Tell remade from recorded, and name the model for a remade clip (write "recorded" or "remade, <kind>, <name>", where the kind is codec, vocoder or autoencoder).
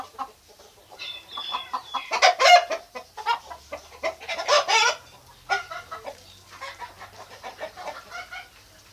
remade, vocoder, BigVGAN v2